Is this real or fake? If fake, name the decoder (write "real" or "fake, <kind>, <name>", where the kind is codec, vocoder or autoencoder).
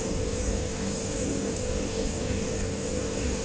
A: fake, codec, DAC